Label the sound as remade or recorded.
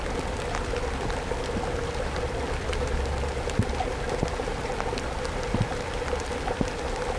recorded